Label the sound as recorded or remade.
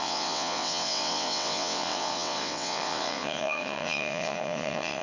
remade